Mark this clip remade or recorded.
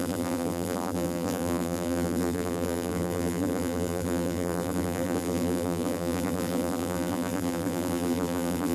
remade